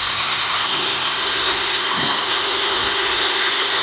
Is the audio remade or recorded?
remade